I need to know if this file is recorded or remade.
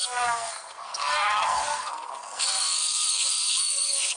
remade